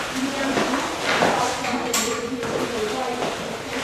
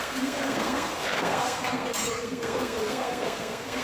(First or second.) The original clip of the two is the first